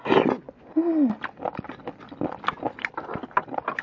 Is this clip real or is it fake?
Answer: real